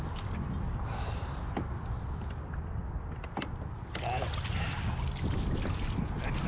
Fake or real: real